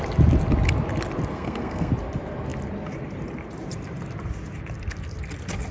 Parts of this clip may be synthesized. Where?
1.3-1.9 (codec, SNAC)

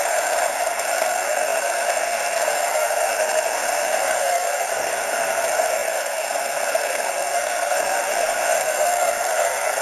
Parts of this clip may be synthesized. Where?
0.0-9.8 (codec, SNAC)

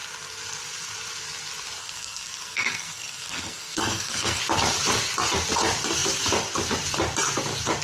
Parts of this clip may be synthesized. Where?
1.8-4.4 (codec, SNAC)

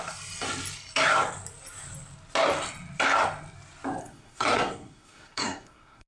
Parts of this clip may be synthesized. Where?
4.0-6.1 (codec, SNAC)